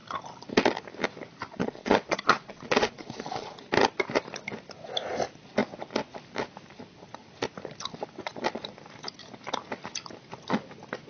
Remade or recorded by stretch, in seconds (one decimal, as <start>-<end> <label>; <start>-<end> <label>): 0.0-1.6 recorded; 1.6-3.6 remade; 3.6-11.1 recorded